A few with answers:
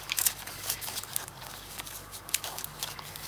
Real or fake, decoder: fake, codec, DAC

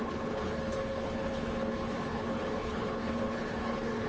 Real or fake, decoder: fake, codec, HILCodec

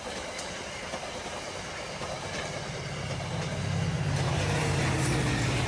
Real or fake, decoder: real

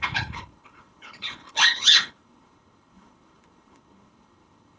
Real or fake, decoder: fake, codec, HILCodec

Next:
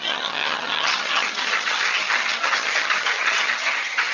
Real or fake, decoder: fake, vocoder, HiFi-GAN